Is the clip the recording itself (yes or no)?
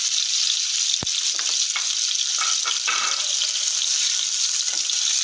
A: yes